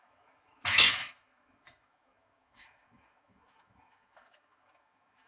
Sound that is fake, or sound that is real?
fake